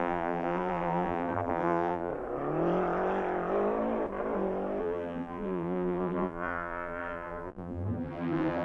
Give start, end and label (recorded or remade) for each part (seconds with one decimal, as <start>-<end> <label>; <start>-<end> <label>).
0.0-2.1 remade; 2.1-4.8 recorded; 4.8-8.6 remade